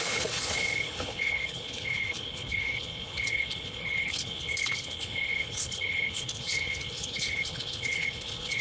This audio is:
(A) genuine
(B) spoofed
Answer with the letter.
B